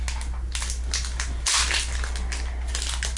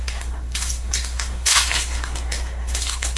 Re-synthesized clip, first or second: second